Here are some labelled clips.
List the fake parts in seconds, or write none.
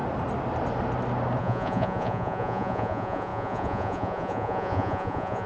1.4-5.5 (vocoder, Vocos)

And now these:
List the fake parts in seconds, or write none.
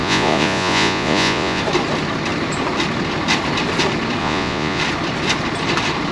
0.0-1.6 (vocoder, Vocos); 4.2-4.8